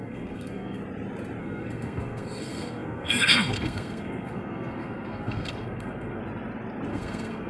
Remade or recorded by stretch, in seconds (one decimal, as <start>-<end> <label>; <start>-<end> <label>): 0.0-0.8 remade; 0.8-1.4 recorded; 1.4-6.2 remade; 6.2-6.9 recorded; 6.9-7.5 remade